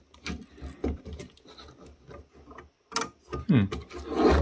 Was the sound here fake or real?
real